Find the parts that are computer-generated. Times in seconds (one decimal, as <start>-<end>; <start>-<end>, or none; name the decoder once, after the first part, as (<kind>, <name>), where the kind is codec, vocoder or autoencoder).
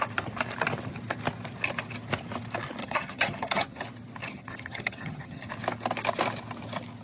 2.8-3.8 (vocoder, HiFi-GAN); 4.2-5.5